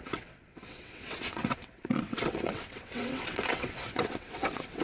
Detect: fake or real fake